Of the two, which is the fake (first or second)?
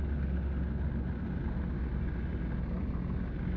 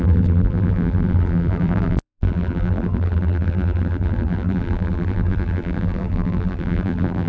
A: second